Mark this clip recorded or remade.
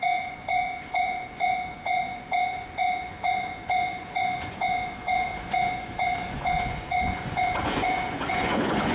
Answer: remade